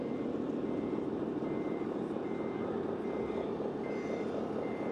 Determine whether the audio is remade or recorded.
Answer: recorded